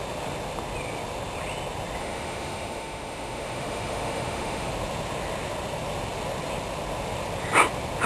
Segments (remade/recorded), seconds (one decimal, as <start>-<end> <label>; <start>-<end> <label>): 0.0-2.0 recorded; 2.0-4.7 remade; 4.7-8.1 recorded